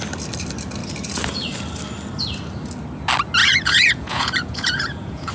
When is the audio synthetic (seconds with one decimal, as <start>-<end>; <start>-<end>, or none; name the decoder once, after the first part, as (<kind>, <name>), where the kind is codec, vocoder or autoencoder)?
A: 3.4-5.3 (vocoder, Vocos)